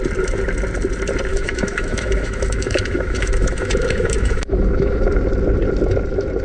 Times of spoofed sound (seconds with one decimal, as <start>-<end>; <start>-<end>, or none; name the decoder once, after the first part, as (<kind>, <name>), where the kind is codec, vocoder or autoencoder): 1.3-5.1 (autoencoder, DAC-VAE)